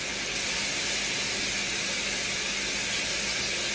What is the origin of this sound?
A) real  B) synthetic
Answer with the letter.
A